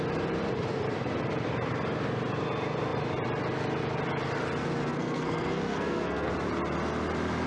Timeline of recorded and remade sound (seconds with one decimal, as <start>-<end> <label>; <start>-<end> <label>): 0.0-4.6 recorded; 4.6-6.3 remade; 6.3-7.5 recorded